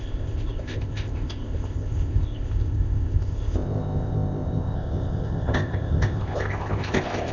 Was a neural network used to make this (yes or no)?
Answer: yes